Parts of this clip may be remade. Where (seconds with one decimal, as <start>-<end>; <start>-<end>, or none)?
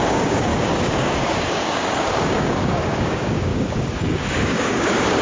0.0-5.2